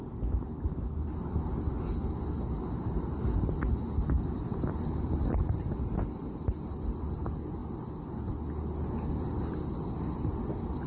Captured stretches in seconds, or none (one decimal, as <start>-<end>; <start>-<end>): 0.0-4.3; 5.4-10.9